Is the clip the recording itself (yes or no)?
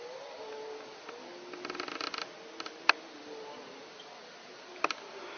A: yes